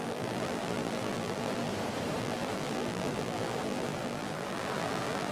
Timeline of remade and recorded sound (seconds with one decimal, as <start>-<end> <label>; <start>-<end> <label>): 0.0-1.7 remade; 1.7-2.2 recorded; 2.2-5.3 remade